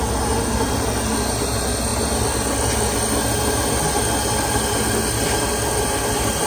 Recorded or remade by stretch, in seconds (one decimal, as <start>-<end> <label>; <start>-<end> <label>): 0.0-6.5 recorded